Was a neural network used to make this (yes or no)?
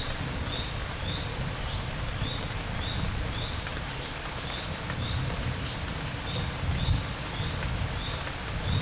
no